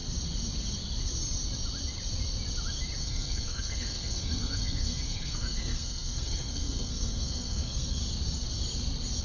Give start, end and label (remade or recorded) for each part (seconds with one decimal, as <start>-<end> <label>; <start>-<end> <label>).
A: 0.0-3.0 recorded; 3.0-8.0 remade; 8.0-9.2 recorded